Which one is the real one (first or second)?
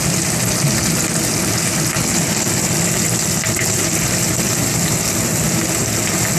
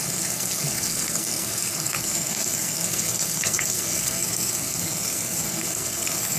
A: first